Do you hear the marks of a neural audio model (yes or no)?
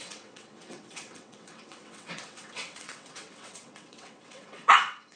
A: yes